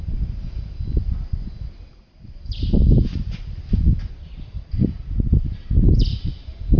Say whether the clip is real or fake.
real